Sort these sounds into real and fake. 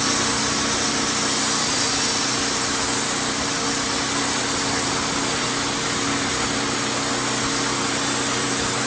real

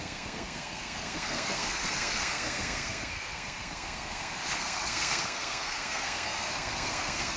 fake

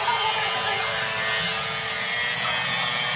real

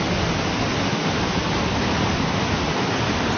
real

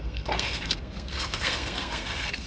fake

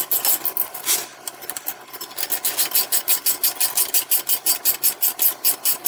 real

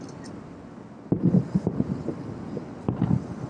real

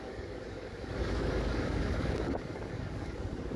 fake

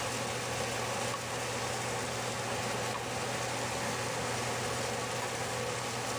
real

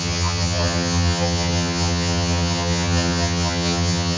fake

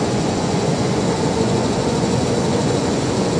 fake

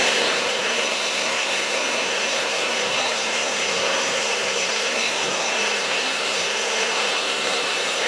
fake